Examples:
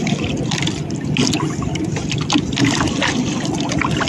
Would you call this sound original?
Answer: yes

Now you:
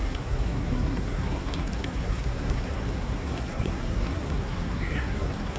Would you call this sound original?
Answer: no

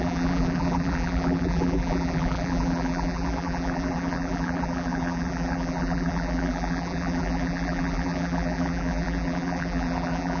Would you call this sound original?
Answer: no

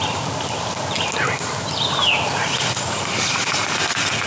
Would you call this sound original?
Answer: yes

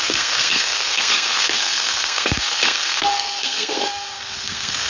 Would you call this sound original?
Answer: no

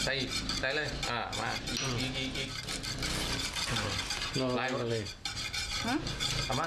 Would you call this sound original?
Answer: yes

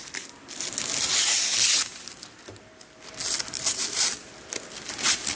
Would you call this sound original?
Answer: yes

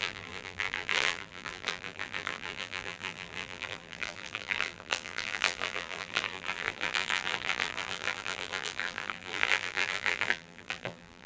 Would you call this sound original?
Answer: no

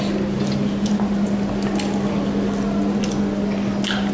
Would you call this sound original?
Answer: yes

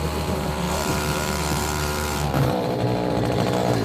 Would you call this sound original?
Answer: no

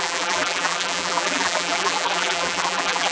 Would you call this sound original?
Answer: no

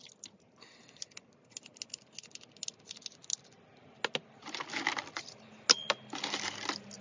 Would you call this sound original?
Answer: yes